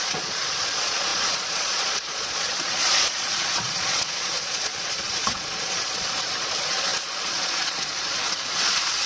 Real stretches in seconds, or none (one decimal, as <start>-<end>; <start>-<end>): none

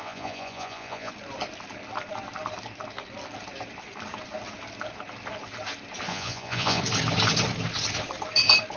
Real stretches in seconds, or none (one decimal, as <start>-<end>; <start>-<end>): 1.1-6.1; 6.8-8.8